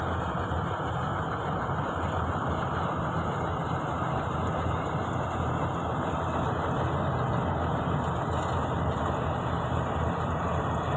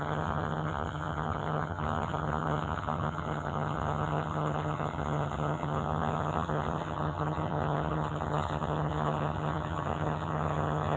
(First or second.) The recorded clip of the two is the first